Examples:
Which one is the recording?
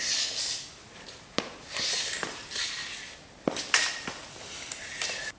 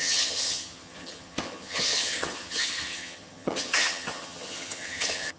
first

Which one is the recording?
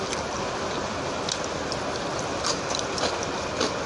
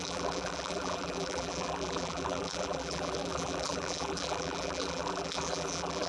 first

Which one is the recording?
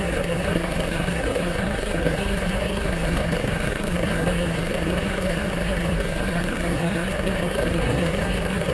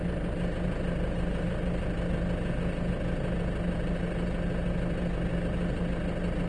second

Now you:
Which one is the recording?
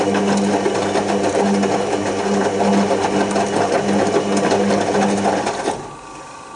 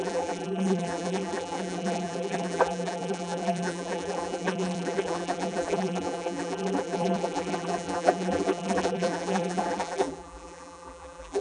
first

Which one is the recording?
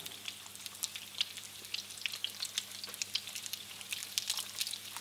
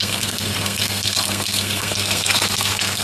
first